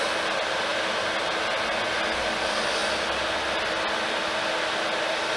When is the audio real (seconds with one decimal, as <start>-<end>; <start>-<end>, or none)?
0.0-5.4